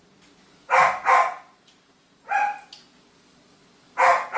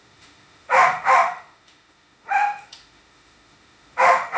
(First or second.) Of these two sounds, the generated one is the second